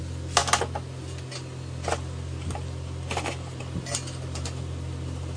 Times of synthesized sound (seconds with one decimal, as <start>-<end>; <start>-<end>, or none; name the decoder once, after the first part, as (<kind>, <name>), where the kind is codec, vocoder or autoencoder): none